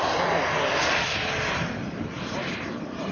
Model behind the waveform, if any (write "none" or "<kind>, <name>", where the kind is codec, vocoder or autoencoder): none